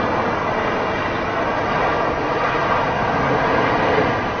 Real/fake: real